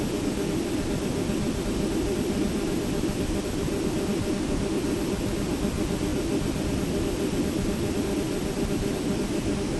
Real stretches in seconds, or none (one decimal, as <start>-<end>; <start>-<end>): 0.0-9.8

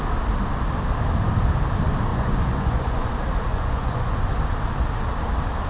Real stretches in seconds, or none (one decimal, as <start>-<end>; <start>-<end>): 0.0-2.1; 3.1-3.5; 4.1-5.7

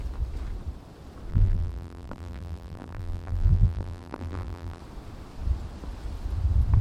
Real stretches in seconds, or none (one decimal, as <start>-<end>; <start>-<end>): 0.0-1.3; 4.8-6.8

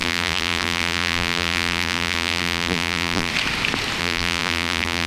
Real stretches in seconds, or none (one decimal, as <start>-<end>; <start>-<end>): 3.3-4.0

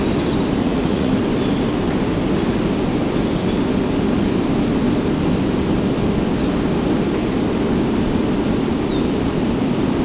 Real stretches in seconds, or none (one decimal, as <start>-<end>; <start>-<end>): 0.0-0.6; 1.1-10.0

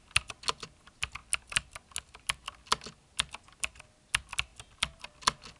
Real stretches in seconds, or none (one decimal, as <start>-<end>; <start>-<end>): 0.0-5.6

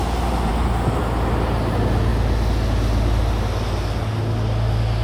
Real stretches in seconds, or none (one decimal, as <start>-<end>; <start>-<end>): 0.0-5.0

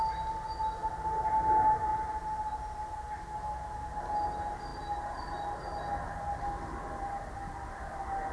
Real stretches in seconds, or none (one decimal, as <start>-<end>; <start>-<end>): 0.0-8.3